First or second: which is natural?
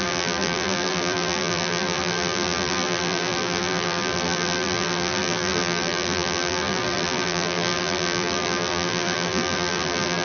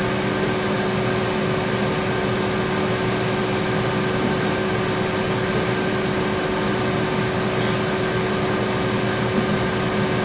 second